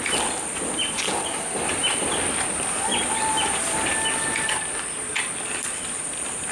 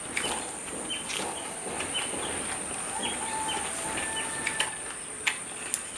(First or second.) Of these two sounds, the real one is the second